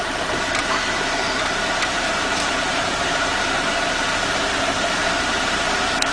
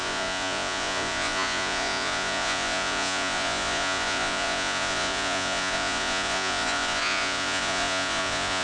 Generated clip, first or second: second